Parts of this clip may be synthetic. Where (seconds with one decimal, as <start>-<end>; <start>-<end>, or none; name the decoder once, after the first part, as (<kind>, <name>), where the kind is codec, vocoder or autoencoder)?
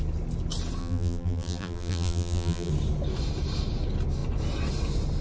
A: 0.8-2.7 (vocoder, BigVGAN v2)